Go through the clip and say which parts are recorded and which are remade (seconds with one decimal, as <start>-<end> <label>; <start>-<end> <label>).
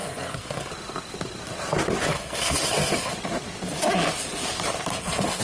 0.0-0.7 remade; 0.7-2.1 recorded; 2.1-3.1 remade; 3.1-4.9 recorded; 4.9-5.4 remade